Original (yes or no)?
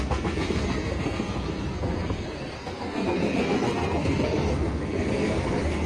no